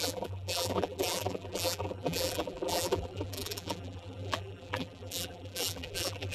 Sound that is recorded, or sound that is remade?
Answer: remade